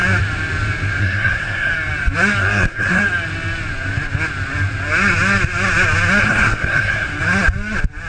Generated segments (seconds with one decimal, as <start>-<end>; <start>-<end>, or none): 1.0-1.7; 2.4-3.0; 6.2-7.1